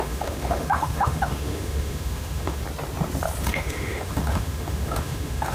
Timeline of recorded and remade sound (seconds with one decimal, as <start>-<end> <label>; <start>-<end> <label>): 0.0-2.6 remade; 2.6-3.4 recorded; 3.4-5.5 remade